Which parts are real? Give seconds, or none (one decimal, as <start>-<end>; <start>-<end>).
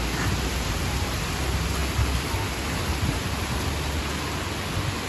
0.0-5.1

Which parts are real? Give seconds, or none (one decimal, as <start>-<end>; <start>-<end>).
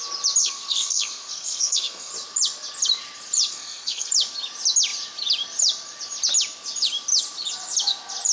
0.0-0.4; 2.1-3.5; 4.1-8.3